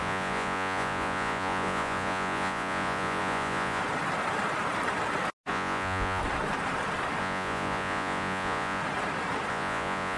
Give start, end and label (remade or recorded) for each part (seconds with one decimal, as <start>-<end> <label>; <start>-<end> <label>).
0.0-3.8 remade; 3.8-5.5 recorded; 5.5-6.2 remade; 6.2-7.2 recorded; 7.2-8.8 remade; 8.8-9.5 recorded; 9.5-10.2 remade